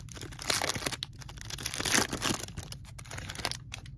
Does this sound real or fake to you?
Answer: real